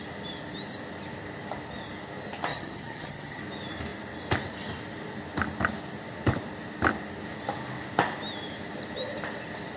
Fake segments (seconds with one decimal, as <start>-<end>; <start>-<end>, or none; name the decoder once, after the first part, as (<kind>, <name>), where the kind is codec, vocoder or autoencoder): 2.5-3.4 (vocoder, HiFi-GAN)